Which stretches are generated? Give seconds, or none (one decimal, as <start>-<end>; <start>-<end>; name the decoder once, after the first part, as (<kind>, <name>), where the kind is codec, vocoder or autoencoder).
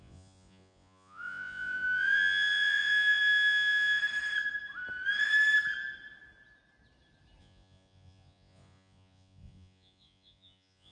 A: 0.0-4.0 (vocoder, Vocos); 7.4-10.9